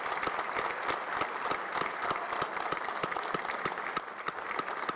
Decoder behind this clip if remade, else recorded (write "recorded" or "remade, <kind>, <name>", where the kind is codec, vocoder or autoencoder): recorded